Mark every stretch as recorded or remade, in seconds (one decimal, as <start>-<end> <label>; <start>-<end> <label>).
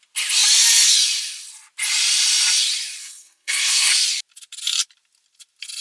0.0-3.0 recorded; 3.0-3.9 remade; 3.9-5.8 recorded